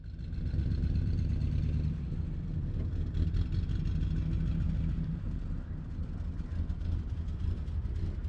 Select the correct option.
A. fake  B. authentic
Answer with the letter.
B